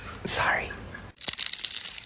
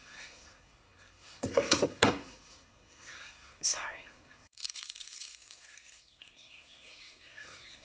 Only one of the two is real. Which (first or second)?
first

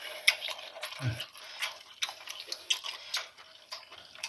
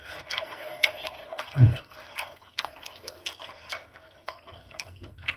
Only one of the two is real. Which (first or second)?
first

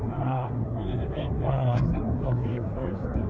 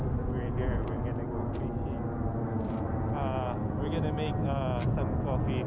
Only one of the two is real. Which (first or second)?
second